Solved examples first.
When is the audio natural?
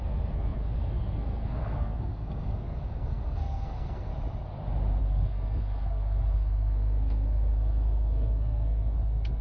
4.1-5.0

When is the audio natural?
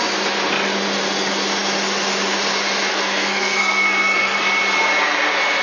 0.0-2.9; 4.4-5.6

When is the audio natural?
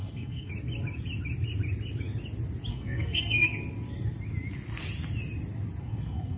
0.5-2.7; 3.5-5.8